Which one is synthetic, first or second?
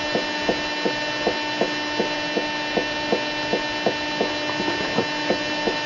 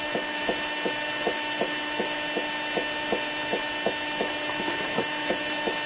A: second